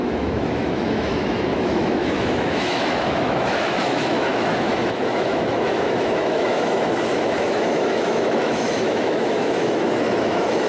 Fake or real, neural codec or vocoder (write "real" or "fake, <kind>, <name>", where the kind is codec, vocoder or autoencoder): fake, autoencoder, DAC-VAE